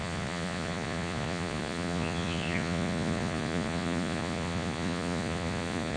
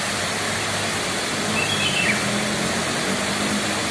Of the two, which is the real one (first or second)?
second